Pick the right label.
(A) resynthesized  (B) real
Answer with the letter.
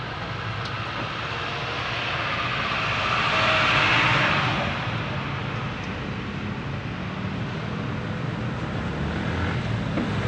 B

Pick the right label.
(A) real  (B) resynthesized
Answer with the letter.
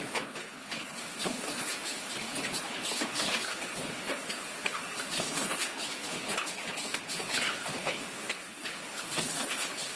B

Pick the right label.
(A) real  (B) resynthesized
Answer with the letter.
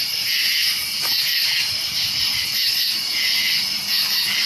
A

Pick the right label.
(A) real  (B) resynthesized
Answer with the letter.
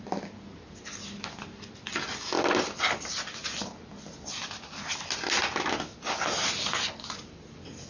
A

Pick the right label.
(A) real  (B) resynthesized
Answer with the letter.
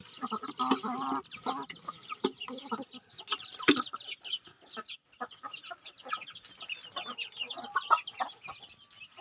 A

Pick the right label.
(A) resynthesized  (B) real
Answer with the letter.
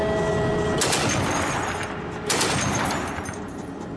B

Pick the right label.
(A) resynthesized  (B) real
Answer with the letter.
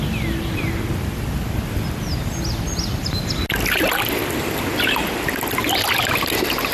B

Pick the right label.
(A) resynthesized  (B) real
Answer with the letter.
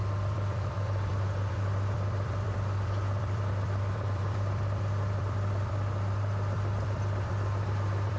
A